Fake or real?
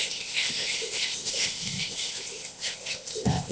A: fake